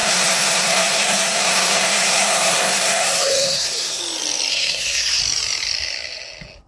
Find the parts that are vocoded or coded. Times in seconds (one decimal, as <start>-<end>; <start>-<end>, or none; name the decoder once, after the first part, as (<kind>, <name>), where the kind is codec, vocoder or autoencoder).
0.0-4.0 (codec, SNAC); 4.5-5.2

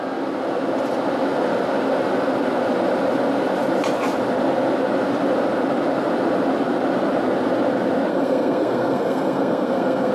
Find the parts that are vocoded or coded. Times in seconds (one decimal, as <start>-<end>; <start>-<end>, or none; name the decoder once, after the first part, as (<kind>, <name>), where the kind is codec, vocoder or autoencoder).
8.1-10.1 (codec, SNAC)